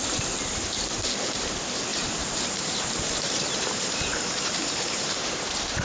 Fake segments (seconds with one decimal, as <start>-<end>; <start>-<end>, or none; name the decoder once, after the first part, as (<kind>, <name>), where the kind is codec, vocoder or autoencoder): 1.9-5.8 (vocoder, BigVGAN v2)